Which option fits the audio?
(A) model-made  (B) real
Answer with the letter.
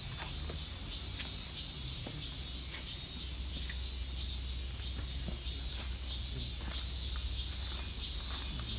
B